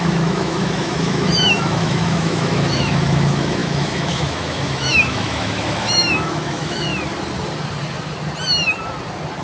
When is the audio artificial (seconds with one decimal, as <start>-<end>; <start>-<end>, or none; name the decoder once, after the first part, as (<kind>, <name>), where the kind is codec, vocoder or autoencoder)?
0.0-6.9 (autoencoder, DAC-VAE)